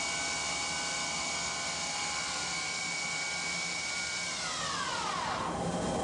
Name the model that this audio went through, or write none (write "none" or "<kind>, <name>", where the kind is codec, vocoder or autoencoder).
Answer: none